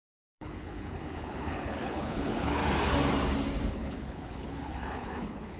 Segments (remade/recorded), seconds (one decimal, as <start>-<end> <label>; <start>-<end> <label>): 0.0-2.6 remade; 2.6-3.7 recorded; 3.7-5.6 remade